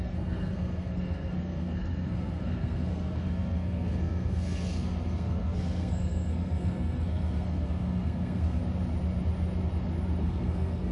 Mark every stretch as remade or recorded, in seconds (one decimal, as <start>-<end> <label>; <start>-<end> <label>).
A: 0.0-8.6 remade; 8.6-10.2 recorded; 10.2-10.9 remade